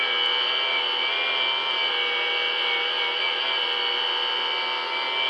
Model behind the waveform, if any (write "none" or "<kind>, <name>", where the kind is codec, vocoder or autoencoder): none